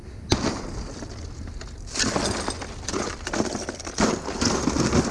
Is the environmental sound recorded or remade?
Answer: recorded